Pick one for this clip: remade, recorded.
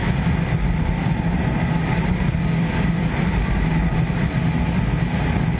recorded